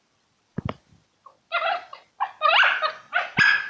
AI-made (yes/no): no